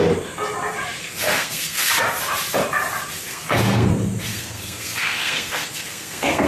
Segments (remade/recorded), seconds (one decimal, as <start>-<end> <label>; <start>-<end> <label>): 0.0-1.0 recorded; 1.0-1.9 remade; 1.9-3.3 recorded; 3.3-3.9 remade; 3.9-4.3 recorded; 4.3-6.5 remade